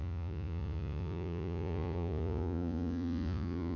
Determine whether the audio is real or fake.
fake